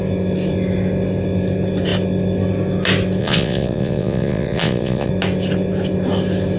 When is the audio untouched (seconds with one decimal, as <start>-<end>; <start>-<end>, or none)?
0.0-3.2; 5.1-6.6